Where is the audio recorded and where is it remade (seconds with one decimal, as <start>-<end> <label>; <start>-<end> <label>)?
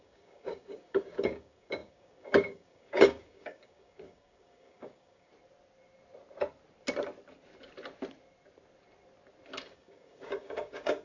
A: 0.0-5.3 remade; 5.3-9.6 recorded; 9.6-11.0 remade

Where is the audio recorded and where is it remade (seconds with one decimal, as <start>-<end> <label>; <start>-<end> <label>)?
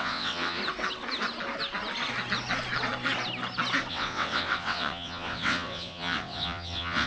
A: 0.0-0.6 remade; 0.6-3.9 recorded; 3.9-7.1 remade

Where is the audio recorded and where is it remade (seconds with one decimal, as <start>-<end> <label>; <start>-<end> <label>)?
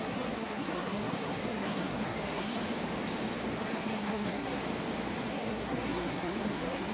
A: 0.0-2.6 remade; 2.6-3.6 recorded; 3.6-4.6 remade; 4.6-5.3 recorded; 5.3-6.9 remade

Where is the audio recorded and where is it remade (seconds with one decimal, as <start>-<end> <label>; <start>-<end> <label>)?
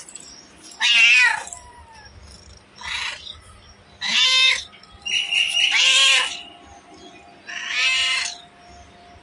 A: 0.0-9.2 recorded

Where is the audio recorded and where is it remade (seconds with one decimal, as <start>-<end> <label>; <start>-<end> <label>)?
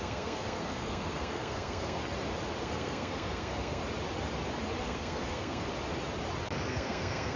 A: 0.0-2.0 remade; 2.0-2.6 recorded; 2.6-3.8 remade; 3.8-4.8 recorded; 4.8-5.7 remade; 5.7-6.7 recorded; 6.7-7.4 remade